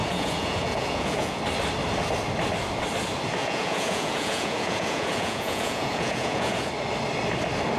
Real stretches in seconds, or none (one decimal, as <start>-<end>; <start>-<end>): 1.4-3.4; 6.7-7.8